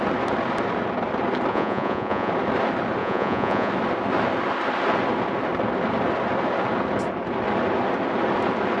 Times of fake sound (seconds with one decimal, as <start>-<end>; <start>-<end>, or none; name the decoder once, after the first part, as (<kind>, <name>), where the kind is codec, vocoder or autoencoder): 1.5-2.3 (vocoder, Vocos); 3.0-3.7